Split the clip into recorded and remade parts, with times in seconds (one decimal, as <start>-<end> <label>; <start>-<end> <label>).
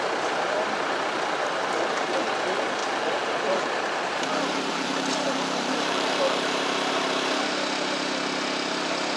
0.0-1.6 recorded; 1.6-2.3 remade; 2.3-2.8 recorded; 2.8-6.9 remade; 6.9-9.2 recorded